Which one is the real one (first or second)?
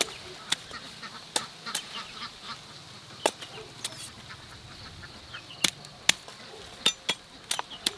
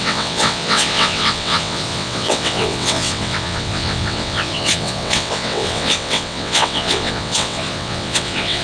first